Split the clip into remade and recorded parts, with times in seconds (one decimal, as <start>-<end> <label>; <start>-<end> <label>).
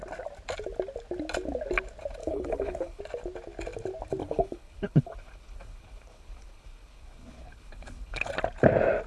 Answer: 0.0-2.2 recorded; 2.2-3.0 remade; 3.0-4.2 recorded; 4.2-8.3 remade; 8.3-9.1 recorded